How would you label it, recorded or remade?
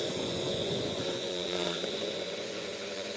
remade